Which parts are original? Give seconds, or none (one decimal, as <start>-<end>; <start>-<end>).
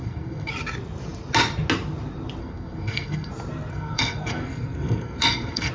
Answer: 0.5-2.4; 3.3-3.7